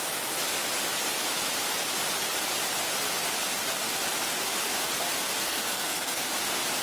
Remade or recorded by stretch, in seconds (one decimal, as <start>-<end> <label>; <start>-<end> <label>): 0.0-5.4 recorded; 5.4-6.2 remade; 6.2-6.8 recorded